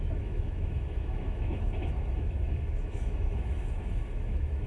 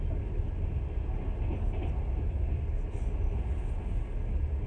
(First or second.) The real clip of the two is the second